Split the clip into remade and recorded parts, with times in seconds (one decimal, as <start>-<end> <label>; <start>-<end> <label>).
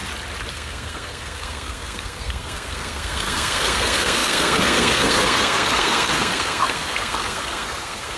0.0-0.5 recorded; 0.5-8.2 remade